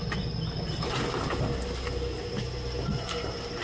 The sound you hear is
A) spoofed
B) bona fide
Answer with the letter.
B